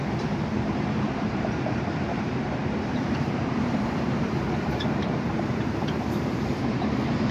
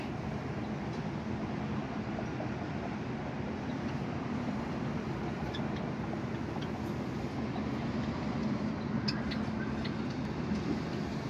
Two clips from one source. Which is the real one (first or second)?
second